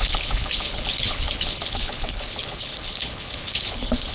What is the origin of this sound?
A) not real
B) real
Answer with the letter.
A